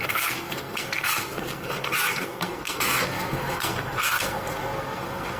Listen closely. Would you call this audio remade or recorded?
remade